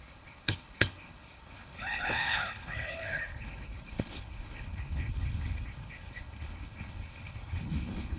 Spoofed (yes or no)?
yes